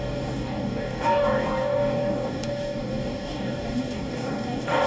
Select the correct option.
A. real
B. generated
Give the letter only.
B